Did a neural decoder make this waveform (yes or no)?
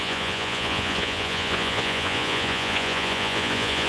yes